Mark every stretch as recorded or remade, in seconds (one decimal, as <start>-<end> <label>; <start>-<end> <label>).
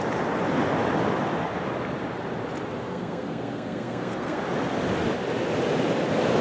0.0-2.9 recorded; 2.9-4.4 remade; 4.4-6.4 recorded